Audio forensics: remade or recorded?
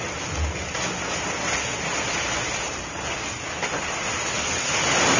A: recorded